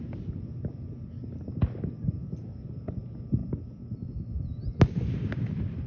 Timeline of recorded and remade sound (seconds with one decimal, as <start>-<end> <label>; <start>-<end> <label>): 0.0-5.9 recorded